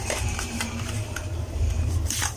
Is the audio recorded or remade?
remade